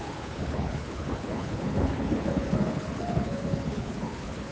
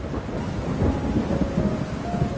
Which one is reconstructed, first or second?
first